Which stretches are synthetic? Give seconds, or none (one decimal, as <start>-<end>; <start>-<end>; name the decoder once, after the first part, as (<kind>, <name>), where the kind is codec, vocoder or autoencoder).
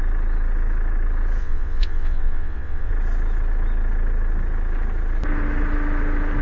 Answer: 1.4-2.9 (vocoder, WaveNeXt)